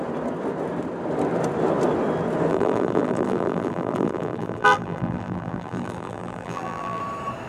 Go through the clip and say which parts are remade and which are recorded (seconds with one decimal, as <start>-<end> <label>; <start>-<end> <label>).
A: 0.0-2.5 recorded; 2.5-7.0 remade; 7.0-7.5 recorded